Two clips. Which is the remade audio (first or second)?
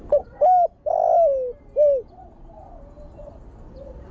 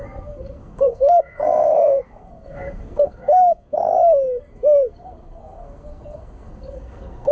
second